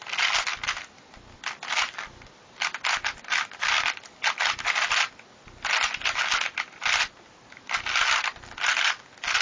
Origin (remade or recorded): recorded